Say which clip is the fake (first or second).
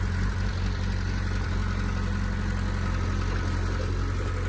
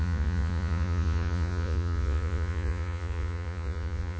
second